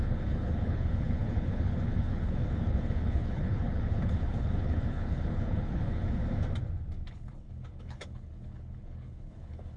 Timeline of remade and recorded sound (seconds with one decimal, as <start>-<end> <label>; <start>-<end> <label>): 0.0-6.2 remade; 6.2-7.1 recorded; 7.1-9.8 remade